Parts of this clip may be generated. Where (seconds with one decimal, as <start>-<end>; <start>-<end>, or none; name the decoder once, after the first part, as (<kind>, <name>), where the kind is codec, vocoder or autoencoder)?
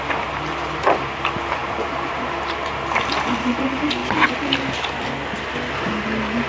1.6-3.0 (vocoder, BigVGAN v2)